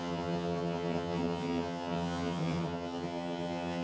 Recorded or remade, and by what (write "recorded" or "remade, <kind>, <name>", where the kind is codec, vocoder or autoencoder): remade, vocoder, HiFi-GAN